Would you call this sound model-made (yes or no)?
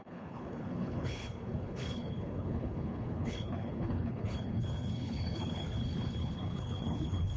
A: yes